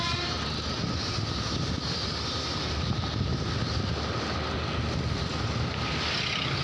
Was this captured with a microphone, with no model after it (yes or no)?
yes